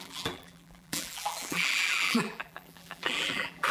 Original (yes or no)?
no